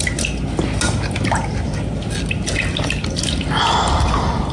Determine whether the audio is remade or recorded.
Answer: recorded